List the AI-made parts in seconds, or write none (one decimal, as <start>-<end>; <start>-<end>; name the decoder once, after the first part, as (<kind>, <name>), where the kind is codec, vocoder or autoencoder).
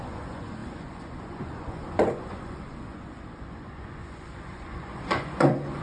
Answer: 0.0-5.8 (vocoder, Vocos)